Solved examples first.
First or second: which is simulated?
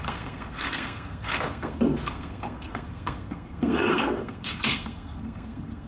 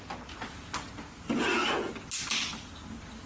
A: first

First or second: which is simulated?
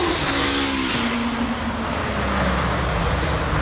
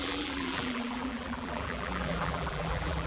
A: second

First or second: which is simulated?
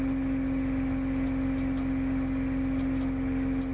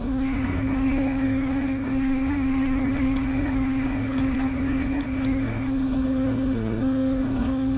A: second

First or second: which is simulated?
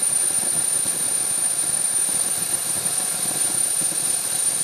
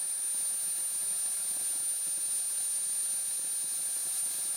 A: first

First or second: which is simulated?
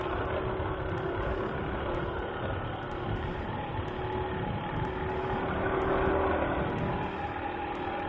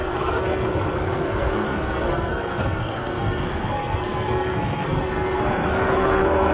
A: second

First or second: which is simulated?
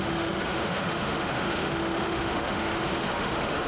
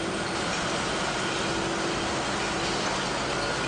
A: first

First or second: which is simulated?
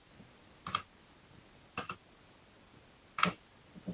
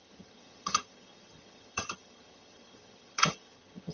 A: second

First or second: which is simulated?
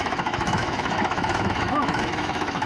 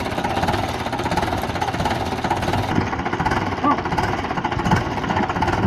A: first